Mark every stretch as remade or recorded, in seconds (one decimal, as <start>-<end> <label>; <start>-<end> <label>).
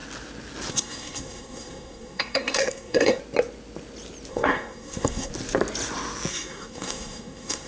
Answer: 0.0-0.7 recorded; 0.7-3.2 remade; 3.2-4.3 recorded; 4.3-5.3 remade; 5.3-6.3 recorded; 6.3-7.7 remade